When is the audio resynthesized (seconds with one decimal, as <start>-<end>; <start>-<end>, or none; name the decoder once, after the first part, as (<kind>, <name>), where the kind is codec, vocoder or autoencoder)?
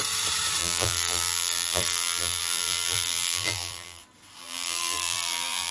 0.6-4.0 (vocoder, BigVGAN v2); 4.4-5.7